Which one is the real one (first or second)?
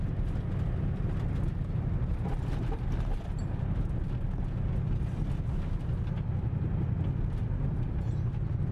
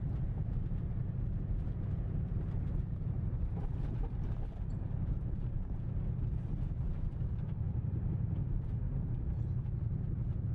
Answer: first